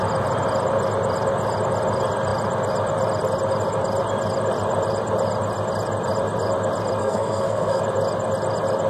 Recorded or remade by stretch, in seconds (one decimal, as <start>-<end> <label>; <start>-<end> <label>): 0.0-7.0 recorded; 7.0-7.8 remade; 7.8-8.9 recorded